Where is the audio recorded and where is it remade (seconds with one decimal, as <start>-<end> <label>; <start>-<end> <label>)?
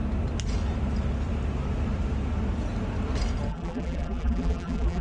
0.0-3.5 recorded; 3.5-5.0 remade